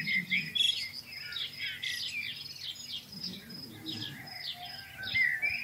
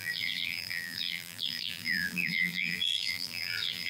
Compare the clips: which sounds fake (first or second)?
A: second